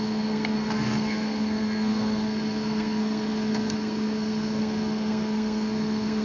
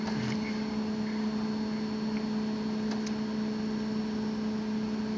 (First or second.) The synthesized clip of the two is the first